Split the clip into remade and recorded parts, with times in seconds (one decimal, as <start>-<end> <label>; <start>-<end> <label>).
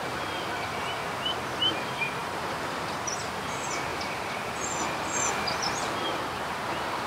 0.0-2.2 recorded; 2.2-3.2 remade; 3.2-3.9 recorded; 3.9-5.3 remade; 5.3-7.1 recorded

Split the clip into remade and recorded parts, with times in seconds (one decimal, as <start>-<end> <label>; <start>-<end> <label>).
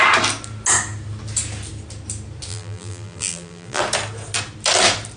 0.0-2.5 recorded; 2.5-3.8 remade; 3.8-5.2 recorded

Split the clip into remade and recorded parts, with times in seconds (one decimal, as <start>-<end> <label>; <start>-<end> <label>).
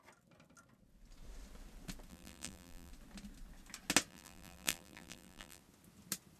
0.0-2.1 recorded; 2.1-2.9 remade; 2.9-4.1 recorded; 4.1-5.6 remade; 5.6-6.4 recorded